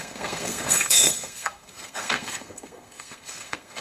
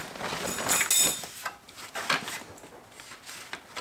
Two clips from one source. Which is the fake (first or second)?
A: first